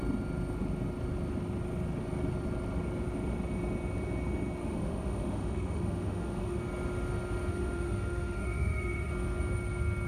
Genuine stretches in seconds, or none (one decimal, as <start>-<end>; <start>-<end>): 0.0-4.6; 6.6-7.5; 9.1-10.1